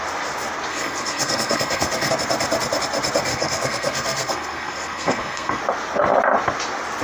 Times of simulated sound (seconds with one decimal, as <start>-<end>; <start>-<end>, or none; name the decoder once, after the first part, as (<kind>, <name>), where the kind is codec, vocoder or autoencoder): 0.7-2.1 (codec, SNAC); 3.3-5.6